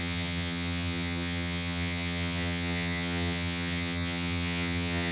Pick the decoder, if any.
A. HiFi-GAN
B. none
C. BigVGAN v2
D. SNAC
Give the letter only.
A